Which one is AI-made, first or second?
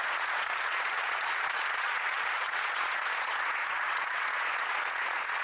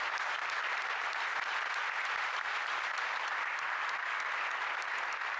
first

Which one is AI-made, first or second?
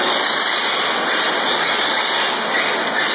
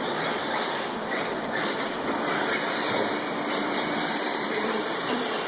second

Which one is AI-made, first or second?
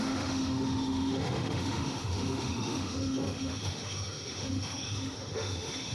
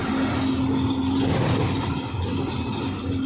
first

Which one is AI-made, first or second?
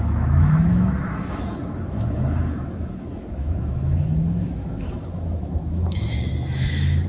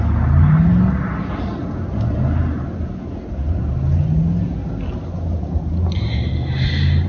first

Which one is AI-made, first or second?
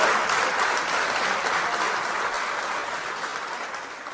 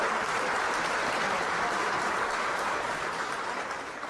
second